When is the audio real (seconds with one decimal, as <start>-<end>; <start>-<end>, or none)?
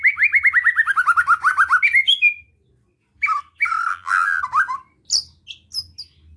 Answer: 0.0-3.9; 4.4-6.4